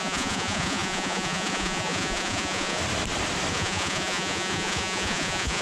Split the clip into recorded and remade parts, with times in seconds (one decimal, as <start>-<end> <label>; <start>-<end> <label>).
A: 0.0-2.8 remade; 2.8-3.5 recorded; 3.5-5.6 remade